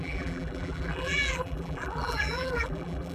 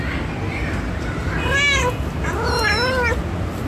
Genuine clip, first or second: second